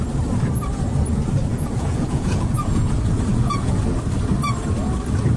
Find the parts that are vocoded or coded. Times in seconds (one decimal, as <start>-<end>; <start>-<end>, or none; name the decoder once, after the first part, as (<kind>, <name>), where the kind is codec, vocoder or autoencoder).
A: 1.5-2.9 (vocoder, Vocos); 3.3-3.8

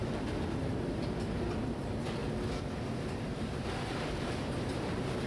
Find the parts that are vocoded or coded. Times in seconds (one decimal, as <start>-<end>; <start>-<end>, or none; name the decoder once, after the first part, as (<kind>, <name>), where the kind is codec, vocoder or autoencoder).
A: 0.7-2.2 (vocoder, BigVGAN v2); 3.2-5.3

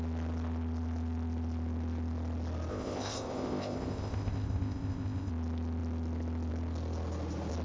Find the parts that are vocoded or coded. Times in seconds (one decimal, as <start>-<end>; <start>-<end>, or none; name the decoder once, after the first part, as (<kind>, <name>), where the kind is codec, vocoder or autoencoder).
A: 2.7-5.3 (codec, ZipCodec)